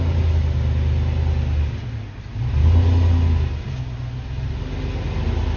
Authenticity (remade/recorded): recorded